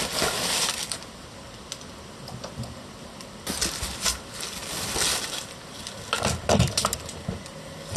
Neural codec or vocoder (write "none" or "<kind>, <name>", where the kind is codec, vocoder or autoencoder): none